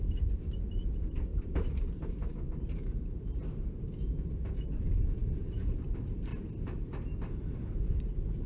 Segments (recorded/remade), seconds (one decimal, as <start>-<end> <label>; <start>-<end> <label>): 0.0-1.3 recorded; 1.3-4.3 remade; 4.3-6.3 recorded; 6.3-8.5 remade